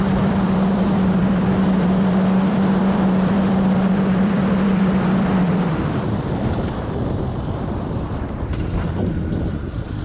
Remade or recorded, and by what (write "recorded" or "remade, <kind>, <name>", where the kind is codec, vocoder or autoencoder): remade, vocoder, BigVGAN v2